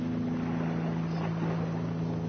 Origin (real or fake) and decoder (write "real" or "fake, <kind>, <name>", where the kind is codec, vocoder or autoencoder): real